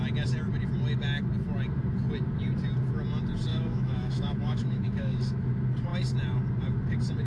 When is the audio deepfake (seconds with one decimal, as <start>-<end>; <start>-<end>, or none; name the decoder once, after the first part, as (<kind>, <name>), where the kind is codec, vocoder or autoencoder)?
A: 3.5-5.4 (autoencoder, DAC-VAE)